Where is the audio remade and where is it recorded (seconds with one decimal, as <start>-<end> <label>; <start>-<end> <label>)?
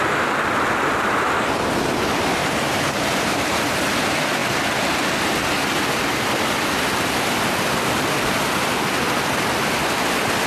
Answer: 0.0-2.4 recorded; 2.4-4.0 remade; 4.0-10.5 recorded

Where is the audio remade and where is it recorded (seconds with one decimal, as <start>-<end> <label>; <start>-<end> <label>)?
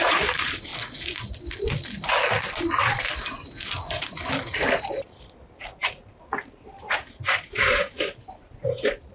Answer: 0.0-0.7 remade; 0.7-4.3 recorded; 4.3-9.1 remade